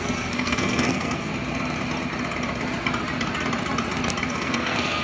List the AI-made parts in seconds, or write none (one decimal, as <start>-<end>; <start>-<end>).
0.0-1.3; 4.3-5.0

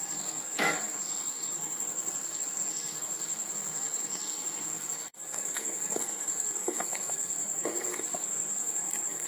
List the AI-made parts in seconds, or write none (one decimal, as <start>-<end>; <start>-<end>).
0.0-9.3

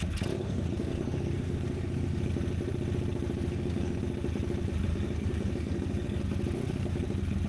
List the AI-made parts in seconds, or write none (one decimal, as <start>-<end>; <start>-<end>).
0.4-2.2; 3.5-4.0; 4.9-6.2

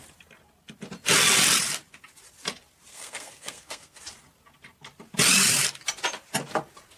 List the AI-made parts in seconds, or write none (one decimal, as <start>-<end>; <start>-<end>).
2.9-4.0

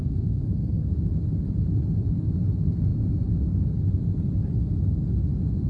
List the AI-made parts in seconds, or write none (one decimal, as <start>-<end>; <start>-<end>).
0.0-0.9

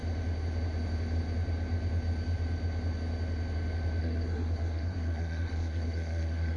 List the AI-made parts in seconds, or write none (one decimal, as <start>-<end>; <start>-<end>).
4.0-6.6

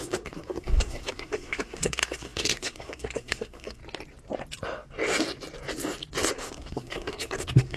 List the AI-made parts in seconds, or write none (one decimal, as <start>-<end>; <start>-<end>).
0.0-3.8; 6.3-7.8

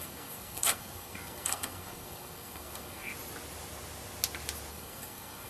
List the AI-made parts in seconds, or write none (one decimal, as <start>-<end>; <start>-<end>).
0.0-3.1; 4.7-5.5